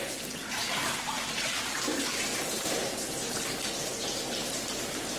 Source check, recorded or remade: remade